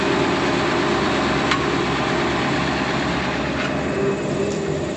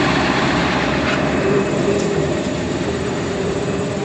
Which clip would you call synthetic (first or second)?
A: second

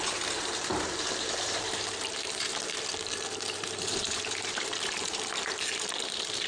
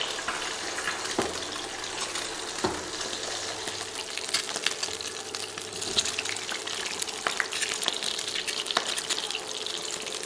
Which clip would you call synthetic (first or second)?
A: first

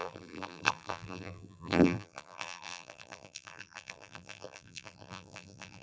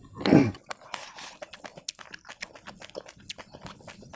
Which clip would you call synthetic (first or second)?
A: first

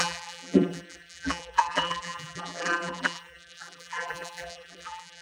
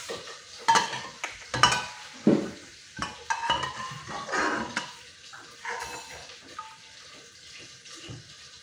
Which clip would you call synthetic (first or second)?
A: first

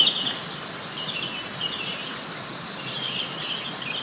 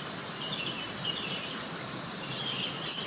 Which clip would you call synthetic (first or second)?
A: second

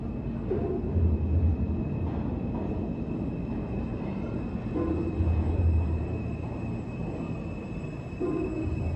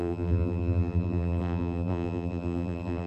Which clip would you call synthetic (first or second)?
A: second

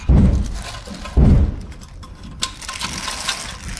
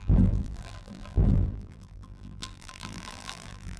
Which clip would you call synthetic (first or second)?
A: second